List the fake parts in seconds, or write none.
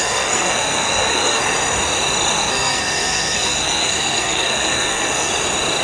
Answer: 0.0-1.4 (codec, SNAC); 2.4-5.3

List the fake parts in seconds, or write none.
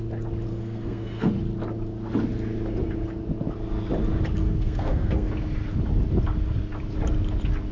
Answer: 0.5-1.3 (codec, SNAC); 4.4-5.3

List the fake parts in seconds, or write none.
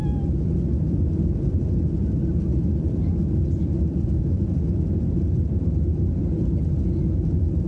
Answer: none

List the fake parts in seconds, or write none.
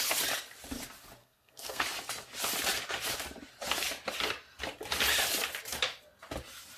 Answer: 1.2-1.8 (codec, SNAC)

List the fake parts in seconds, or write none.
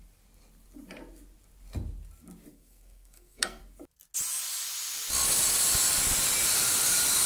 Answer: 2.5-3.6 (codec, SNAC)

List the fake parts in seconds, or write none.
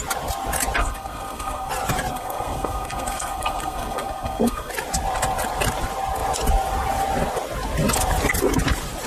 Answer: 0.8-1.7 (codec, SNAC); 2.1-4.7